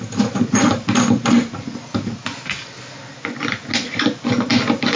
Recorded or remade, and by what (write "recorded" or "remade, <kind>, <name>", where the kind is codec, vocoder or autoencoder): recorded